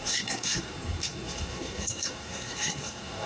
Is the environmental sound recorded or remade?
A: remade